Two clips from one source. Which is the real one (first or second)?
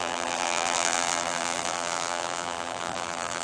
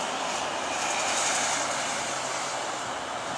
second